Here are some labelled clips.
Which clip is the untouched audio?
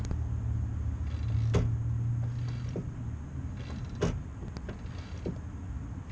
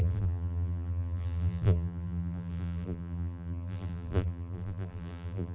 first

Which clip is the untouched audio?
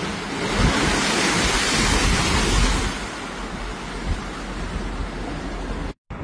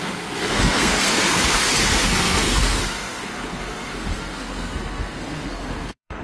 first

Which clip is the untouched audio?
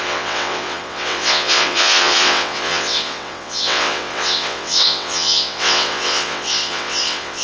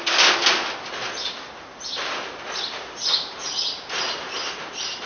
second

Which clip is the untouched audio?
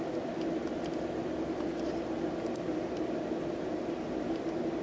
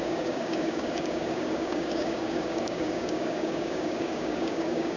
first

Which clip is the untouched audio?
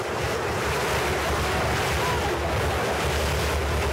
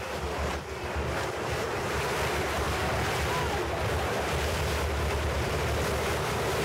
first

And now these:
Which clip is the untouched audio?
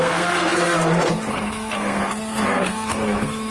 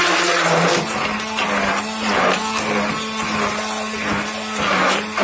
second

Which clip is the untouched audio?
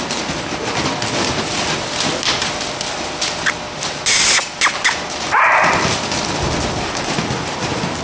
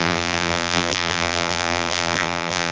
first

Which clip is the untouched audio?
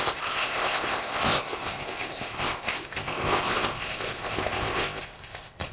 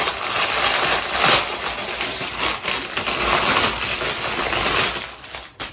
second